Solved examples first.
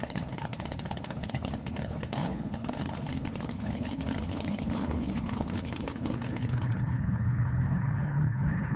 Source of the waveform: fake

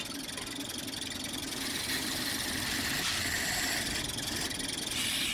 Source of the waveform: real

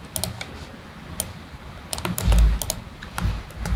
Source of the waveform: real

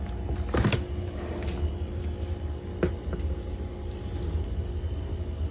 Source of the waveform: real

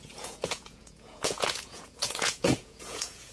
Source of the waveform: fake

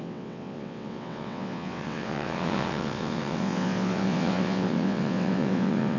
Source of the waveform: fake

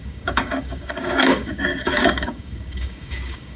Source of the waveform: fake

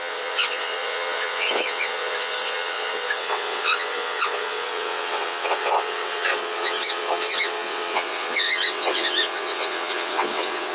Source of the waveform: fake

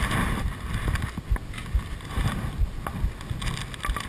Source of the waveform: real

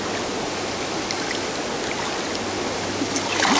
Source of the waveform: real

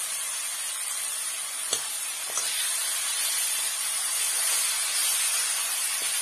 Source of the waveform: real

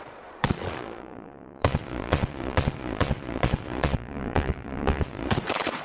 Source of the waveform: fake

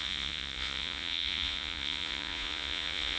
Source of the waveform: fake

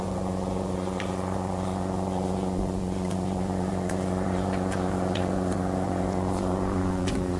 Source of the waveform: fake